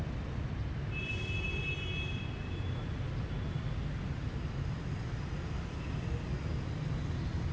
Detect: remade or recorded recorded